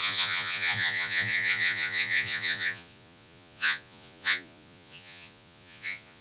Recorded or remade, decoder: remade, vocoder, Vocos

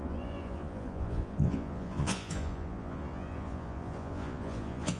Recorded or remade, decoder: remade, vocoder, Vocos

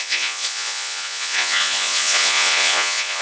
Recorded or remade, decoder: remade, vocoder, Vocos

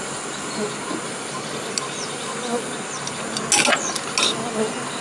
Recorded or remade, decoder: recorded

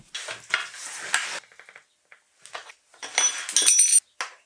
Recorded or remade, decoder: recorded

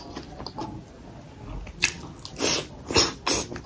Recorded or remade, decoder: recorded